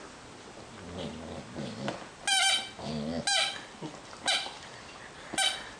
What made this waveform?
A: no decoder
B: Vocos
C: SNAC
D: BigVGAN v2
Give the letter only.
A